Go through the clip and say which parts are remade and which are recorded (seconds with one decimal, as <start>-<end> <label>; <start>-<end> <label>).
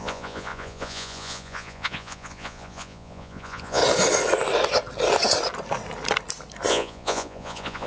0.0-3.8 remade; 3.8-6.7 recorded; 6.7-7.9 remade